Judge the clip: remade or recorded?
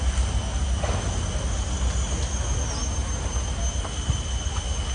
recorded